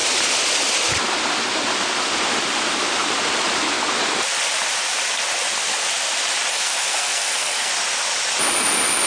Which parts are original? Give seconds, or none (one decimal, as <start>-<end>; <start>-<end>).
0.0-6.5; 7.7-9.1